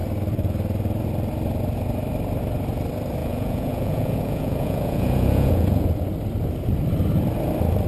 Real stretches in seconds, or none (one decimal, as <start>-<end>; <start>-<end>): 0.0-3.2; 5.9-7.9